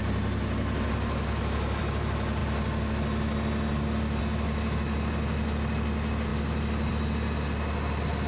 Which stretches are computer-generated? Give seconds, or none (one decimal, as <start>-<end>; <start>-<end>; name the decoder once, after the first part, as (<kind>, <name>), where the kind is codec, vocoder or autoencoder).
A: none